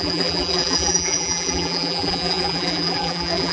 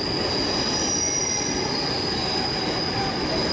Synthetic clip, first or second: first